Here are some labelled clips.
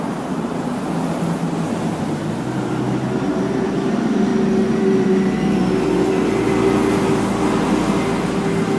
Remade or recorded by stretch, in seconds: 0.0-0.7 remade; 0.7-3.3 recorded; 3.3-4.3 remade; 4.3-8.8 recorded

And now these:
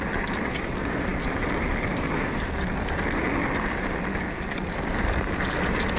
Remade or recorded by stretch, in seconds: 0.0-6.0 recorded

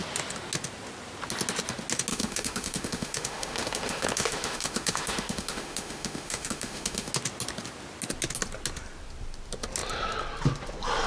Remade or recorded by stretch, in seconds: 0.0-2.1 recorded; 2.1-7.1 remade; 7.1-11.1 recorded

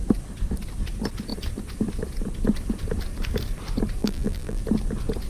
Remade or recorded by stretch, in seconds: 0.0-4.0 recorded; 4.0-4.6 remade; 4.6-5.3 recorded